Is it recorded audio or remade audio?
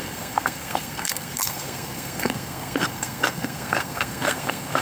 remade